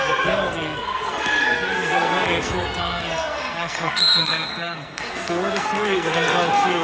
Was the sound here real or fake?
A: fake